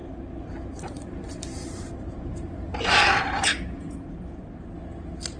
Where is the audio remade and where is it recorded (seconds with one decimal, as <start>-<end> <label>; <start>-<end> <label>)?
0.0-1.9 remade; 1.9-3.5 recorded; 3.5-4.7 remade; 4.7-5.4 recorded